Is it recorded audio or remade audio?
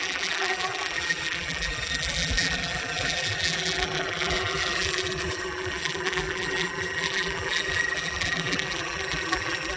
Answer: remade